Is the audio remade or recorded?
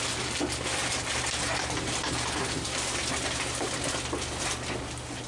recorded